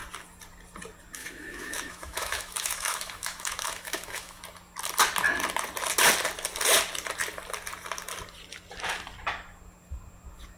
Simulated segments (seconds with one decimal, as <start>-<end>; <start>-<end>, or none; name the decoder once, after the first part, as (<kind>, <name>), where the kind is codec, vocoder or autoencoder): 1.2-4.4 (autoencoder, DAC-VAE)

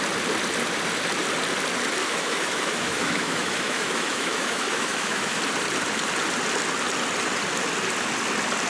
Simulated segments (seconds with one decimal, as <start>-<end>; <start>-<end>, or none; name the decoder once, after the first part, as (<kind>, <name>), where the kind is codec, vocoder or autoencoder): 2.0-5.4 (autoencoder, DAC-VAE)

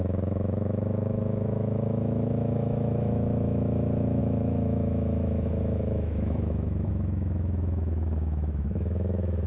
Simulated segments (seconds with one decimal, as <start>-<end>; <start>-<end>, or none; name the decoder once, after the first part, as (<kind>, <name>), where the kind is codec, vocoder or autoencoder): 0.0-9.5 (autoencoder, DAC-VAE)

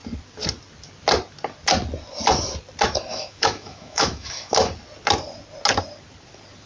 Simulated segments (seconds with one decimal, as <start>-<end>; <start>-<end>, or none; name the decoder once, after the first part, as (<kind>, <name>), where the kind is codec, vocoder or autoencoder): 3.1-4.5 (autoencoder, DAC-VAE)

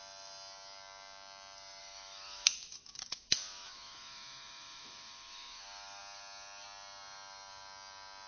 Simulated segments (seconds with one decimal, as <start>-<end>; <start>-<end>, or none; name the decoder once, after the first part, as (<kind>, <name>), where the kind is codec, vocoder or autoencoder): 1.8-6.0 (autoencoder, DAC-VAE)

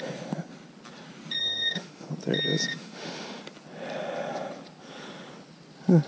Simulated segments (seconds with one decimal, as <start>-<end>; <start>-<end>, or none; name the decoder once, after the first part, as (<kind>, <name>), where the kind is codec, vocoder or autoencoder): 1.4-2.1 (autoencoder, DAC-VAE); 2.7-3.4

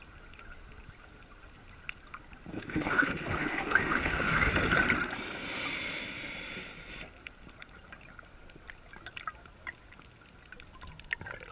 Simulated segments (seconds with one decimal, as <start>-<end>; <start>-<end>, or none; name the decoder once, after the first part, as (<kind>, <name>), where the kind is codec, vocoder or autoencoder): 2.5-4.5 (autoencoder, DAC-VAE)

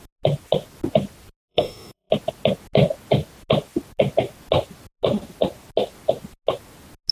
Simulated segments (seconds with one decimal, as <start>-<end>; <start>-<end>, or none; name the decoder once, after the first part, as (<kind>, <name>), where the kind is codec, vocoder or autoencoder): 1.5-2.1 (autoencoder, DAC-VAE)